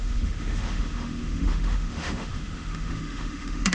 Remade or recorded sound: remade